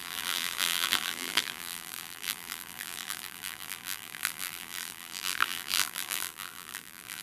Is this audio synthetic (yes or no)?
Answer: yes